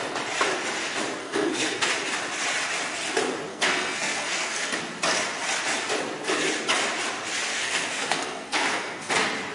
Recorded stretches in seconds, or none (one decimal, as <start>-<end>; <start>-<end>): 0.0-1.2; 1.9-3.5; 4.8-7.5; 9.1-9.5